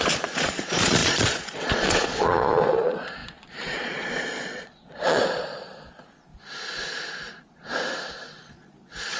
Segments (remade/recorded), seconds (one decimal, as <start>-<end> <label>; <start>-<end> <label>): 0.0-6.3 remade; 6.3-8.4 recorded; 8.4-9.2 remade